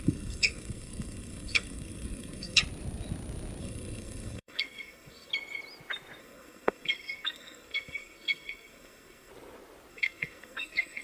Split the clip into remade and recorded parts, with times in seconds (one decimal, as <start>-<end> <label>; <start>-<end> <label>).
0.0-2.6 remade; 2.6-3.6 recorded; 3.6-5.3 remade; 5.3-6.2 recorded; 6.2-9.3 remade; 9.3-9.9 recorded; 9.9-11.0 remade